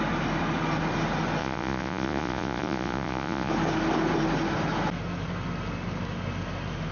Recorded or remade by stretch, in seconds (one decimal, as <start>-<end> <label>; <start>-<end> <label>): 0.0-1.4 recorded; 1.4-3.5 remade; 3.5-6.9 recorded